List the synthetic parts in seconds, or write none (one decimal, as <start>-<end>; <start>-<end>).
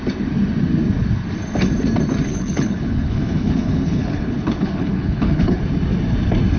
2.3-5.6